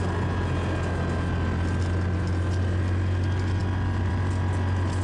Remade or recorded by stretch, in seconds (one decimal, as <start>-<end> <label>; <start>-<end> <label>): 0.0-5.0 recorded